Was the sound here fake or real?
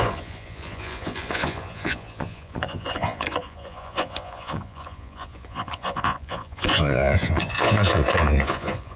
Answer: fake